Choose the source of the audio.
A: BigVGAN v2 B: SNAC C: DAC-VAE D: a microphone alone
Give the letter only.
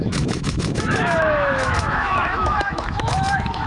C